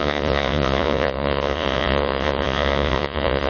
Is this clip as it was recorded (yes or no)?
no